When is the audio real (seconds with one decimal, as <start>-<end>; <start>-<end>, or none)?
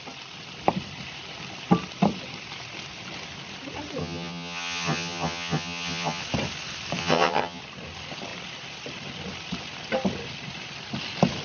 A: 0.0-4.0; 6.2-7.0; 7.6-11.4